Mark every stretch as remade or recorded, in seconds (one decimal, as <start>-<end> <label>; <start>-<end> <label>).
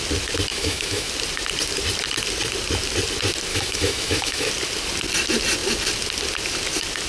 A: 0.0-0.5 recorded; 0.5-1.1 remade; 1.1-3.5 recorded; 3.5-4.5 remade; 4.5-7.1 recorded